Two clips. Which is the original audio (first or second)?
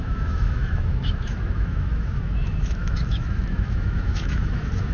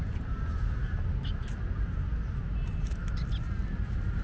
second